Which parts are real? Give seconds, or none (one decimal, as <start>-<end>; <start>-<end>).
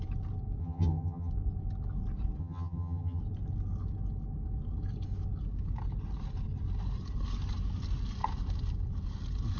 0.0-0.6; 1.3-2.4; 3.2-9.6